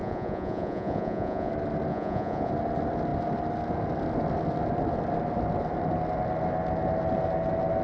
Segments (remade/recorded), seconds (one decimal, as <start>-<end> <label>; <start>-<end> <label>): 0.0-1.5 remade; 1.5-1.9 recorded; 1.9-2.5 remade; 2.5-7.8 recorded